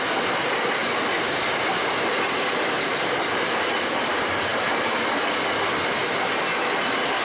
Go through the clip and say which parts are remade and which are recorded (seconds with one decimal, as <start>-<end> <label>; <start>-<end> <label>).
0.0-7.2 recorded